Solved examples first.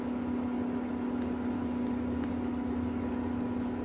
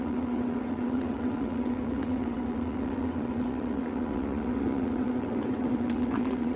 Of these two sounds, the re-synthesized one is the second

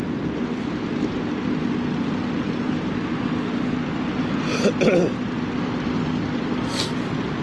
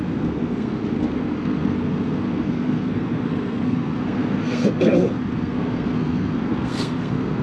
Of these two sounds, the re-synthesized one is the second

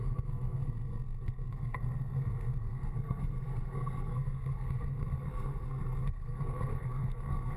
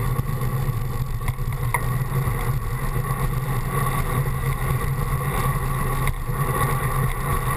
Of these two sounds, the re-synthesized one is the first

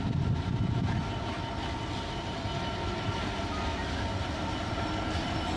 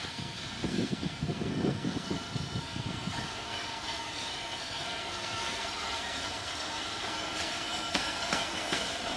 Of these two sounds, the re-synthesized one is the second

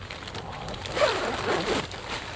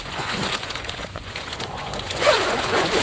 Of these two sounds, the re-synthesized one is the second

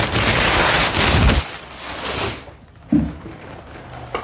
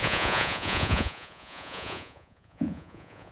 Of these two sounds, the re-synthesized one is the second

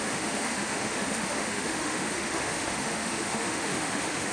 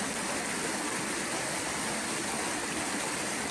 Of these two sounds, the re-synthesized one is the first